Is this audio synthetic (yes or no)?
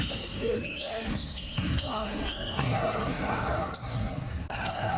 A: yes